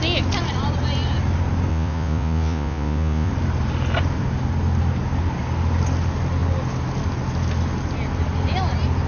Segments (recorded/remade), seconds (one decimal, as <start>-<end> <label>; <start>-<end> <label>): 0.0-1.7 recorded; 1.7-3.3 remade; 3.3-9.1 recorded